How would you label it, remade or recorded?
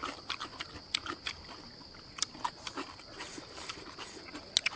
recorded